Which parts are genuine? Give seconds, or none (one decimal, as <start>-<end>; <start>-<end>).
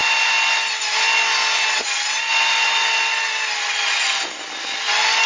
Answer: 0.0-5.3